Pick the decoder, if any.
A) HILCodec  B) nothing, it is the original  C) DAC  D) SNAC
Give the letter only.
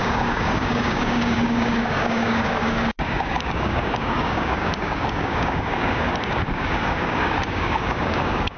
C